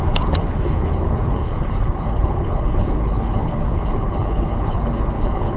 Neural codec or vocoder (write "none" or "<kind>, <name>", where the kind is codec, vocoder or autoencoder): codec, HILCodec